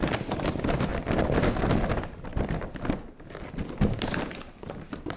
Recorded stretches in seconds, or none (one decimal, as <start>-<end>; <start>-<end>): 0.9-4.0